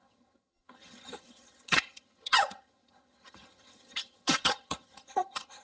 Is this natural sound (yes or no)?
no